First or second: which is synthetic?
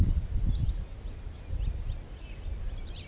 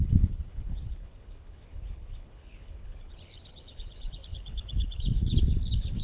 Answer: second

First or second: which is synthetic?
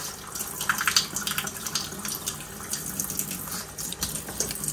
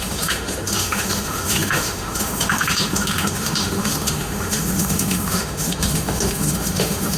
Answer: second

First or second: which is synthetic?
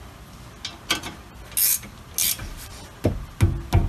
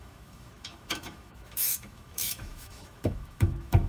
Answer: second